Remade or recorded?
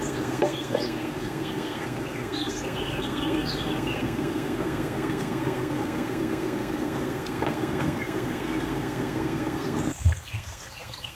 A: remade